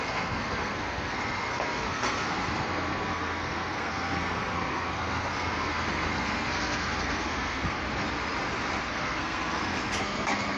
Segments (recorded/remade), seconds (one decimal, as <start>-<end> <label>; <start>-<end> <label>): 0.0-7.8 remade; 7.8-8.9 recorded; 8.9-10.6 remade